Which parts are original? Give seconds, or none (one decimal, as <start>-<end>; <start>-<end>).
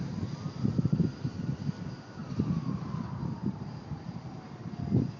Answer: 0.0-2.2; 4.6-5.2